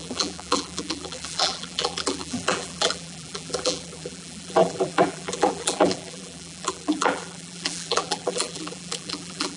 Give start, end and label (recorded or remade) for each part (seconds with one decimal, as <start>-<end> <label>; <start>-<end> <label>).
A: 0.0-9.6 remade